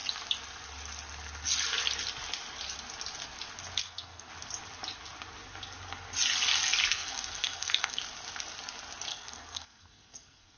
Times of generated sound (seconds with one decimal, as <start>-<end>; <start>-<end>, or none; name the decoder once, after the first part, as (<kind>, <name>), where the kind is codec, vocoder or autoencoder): 3.8-4.3 (codec, SNAC); 6.9-8.0; 9.1-10.6